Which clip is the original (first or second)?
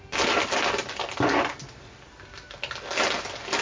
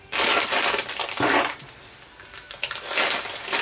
first